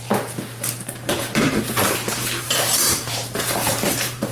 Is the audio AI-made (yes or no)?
yes